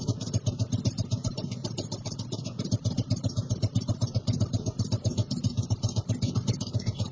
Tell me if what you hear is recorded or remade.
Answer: remade